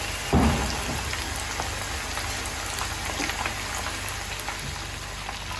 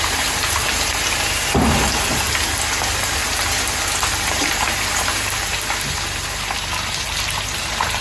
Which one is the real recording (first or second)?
first